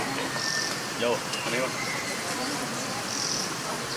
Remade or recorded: recorded